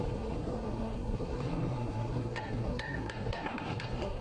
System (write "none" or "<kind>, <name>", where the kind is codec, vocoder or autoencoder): codec, SNAC